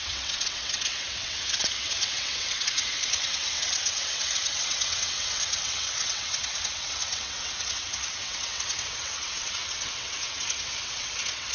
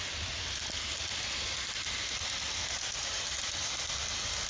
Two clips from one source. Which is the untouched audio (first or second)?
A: second